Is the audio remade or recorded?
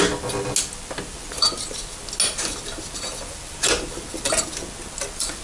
recorded